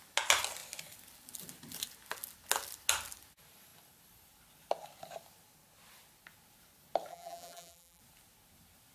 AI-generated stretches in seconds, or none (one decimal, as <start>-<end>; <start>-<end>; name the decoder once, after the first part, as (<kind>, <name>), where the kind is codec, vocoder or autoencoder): 7.1-8.0 (vocoder, BigVGAN v2)